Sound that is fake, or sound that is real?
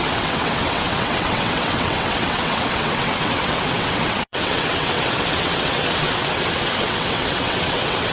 fake